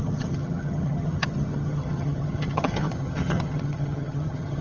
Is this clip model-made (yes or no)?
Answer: yes